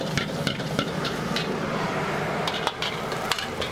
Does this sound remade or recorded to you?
remade